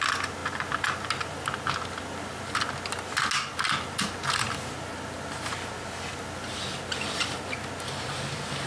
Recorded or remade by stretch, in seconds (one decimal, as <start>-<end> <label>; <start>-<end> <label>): 0.0-8.7 recorded